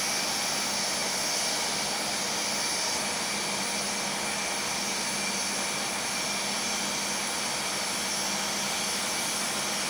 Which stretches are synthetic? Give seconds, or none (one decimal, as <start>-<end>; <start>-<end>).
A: none

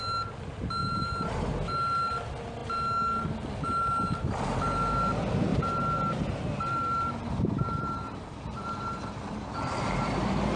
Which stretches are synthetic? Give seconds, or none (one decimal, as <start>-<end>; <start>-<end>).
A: 0.8-1.3; 5.5-10.6

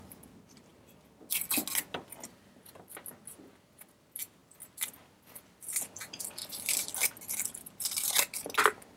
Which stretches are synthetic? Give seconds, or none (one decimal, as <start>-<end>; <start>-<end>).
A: 6.4-6.9